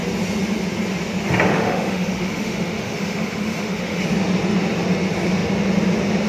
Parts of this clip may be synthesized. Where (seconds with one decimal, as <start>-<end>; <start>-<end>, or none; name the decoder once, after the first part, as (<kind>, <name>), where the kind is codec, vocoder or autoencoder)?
1.5-4.0 (autoencoder, DAC-VAE)